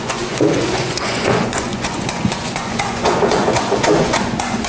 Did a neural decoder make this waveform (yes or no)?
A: yes